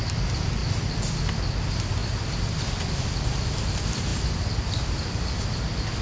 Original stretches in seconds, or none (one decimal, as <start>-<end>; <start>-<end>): 0.0-6.0